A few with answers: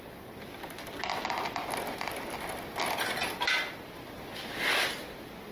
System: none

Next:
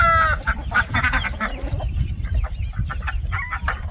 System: none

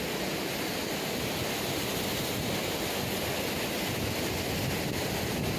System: none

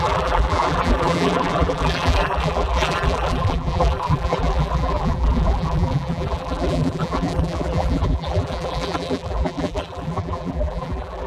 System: vocoder, BigVGAN v2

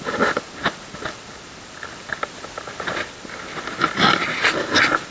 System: none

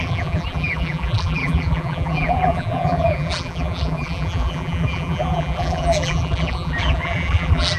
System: vocoder, BigVGAN v2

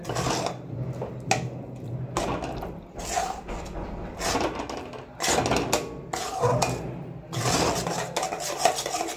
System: none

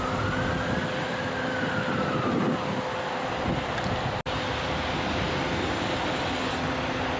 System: none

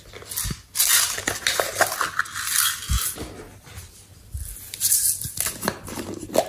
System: none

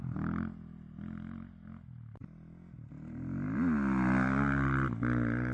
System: none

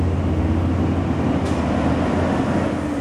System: none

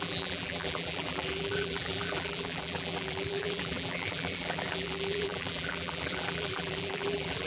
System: vocoder, BigVGAN v2